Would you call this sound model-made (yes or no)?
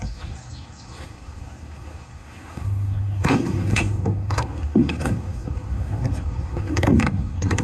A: yes